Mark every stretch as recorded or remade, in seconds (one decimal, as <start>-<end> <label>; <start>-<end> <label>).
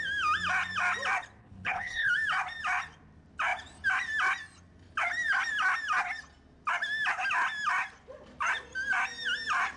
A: 0.0-1.4 recorded; 1.4-2.1 remade; 2.1-9.8 recorded